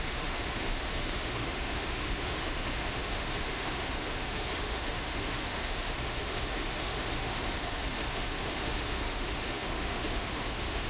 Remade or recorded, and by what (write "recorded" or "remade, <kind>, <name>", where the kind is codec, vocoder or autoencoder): remade, autoencoder, DAC-VAE